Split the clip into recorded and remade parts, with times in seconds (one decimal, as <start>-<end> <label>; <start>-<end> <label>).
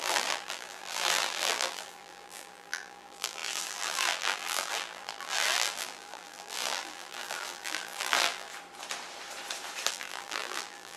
0.0-8.5 remade; 8.5-9.9 recorded; 9.9-11.0 remade